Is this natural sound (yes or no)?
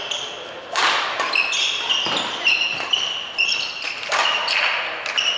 yes